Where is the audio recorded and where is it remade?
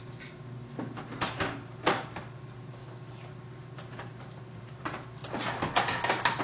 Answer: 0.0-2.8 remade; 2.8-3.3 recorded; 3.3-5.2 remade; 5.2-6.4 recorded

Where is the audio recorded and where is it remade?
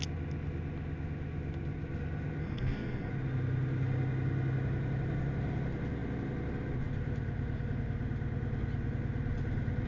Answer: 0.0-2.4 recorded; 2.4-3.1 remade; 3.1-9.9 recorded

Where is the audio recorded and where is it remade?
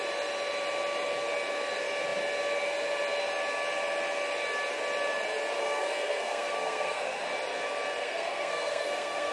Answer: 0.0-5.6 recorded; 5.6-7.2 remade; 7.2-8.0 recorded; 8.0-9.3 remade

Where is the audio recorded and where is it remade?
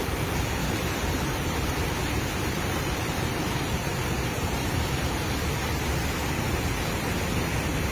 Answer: 0.0-0.6 recorded; 0.6-5.3 remade; 5.3-7.9 recorded